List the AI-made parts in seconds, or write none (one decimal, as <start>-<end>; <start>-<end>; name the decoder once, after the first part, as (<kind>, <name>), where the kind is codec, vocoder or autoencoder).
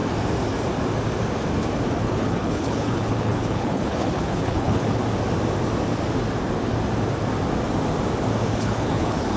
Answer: 2.0-5.0 (codec, HILCodec); 8.6-9.4